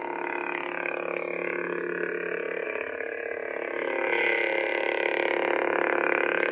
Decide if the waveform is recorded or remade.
recorded